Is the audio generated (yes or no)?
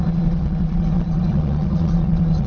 yes